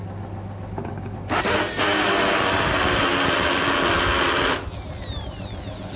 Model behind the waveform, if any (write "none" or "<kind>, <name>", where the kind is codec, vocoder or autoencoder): none